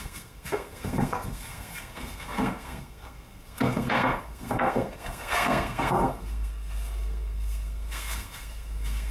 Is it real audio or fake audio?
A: fake